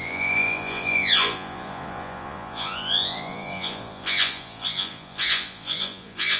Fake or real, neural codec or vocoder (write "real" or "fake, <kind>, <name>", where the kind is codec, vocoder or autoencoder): fake, vocoder, Vocos